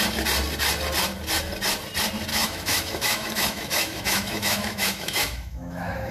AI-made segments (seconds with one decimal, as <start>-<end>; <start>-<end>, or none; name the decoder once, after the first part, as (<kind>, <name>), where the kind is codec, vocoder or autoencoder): 2.3-6.1 (autoencoder, DAC-VAE)